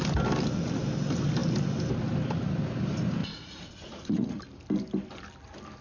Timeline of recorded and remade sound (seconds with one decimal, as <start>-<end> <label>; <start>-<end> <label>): 0.0-3.2 recorded; 3.2-4.4 remade; 4.4-5.8 recorded